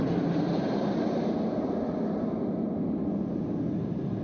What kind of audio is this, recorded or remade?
recorded